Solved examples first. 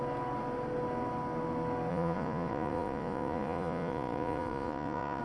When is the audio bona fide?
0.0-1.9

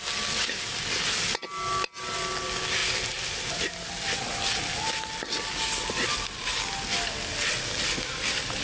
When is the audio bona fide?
0.0-2.8; 4.2-8.6

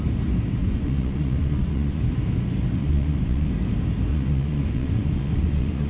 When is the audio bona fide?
0.0-0.6; 2.0-2.8; 3.5-4.1

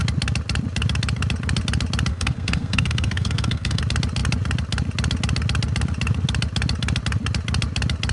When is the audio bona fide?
0.0-2.1; 3.8-8.1

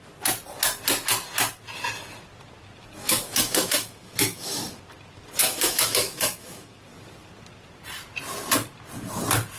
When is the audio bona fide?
0.0-3.0; 4.8-5.4; 6.8-9.6

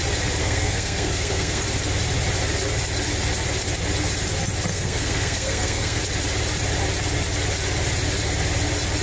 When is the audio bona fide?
0.0-0.4; 1.6-4.7; 6.0-9.0